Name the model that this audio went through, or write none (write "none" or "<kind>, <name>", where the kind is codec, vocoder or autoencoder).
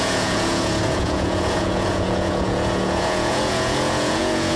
vocoder, Vocos